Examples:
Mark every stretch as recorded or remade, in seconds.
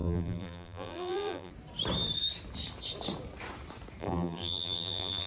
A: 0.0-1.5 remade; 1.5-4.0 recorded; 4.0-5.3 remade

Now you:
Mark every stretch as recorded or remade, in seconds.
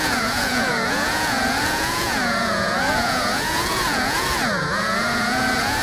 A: 0.0-5.8 remade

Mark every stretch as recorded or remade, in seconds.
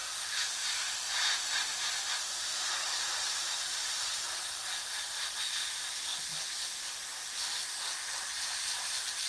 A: 0.0-6.1 remade; 6.1-8.9 recorded; 8.9-9.3 remade